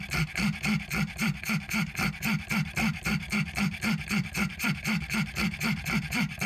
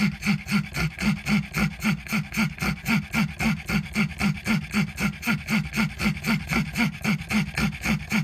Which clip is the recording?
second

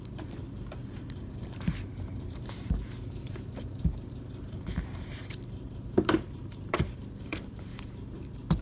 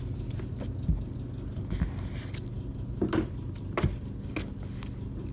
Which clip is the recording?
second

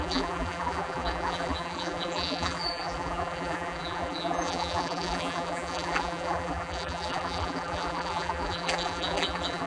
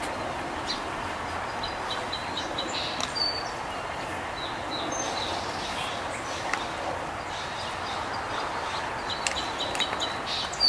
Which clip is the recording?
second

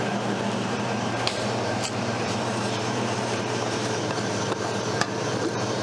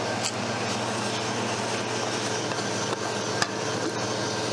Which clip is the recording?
second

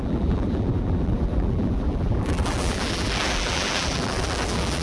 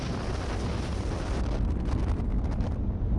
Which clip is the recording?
second